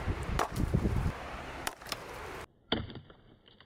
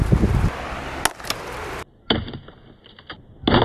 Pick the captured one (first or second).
second